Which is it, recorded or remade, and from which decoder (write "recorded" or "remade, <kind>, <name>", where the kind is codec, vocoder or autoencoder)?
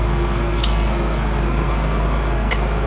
remade, codec, SNAC